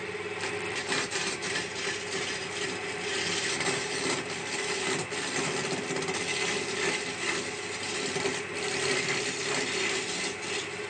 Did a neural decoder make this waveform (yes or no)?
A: no